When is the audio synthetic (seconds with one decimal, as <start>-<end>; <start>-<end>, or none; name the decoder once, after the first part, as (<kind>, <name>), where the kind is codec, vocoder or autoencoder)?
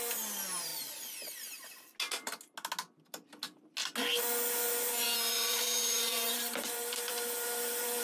0.0-0.7 (vocoder, BigVGAN v2); 4.5-8.0